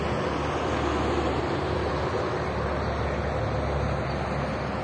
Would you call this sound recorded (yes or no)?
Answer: yes